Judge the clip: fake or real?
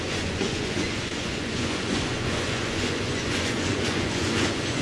fake